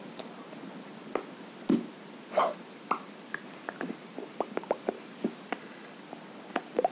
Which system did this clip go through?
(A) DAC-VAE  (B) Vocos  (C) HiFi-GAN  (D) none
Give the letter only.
D